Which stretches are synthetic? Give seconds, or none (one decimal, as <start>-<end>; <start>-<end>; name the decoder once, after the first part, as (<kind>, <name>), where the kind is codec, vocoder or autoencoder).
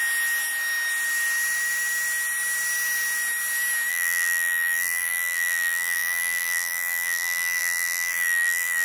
3.9-8.8 (vocoder, BigVGAN v2)